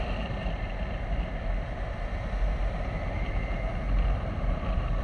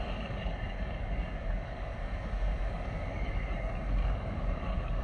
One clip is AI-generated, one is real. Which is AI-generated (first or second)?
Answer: second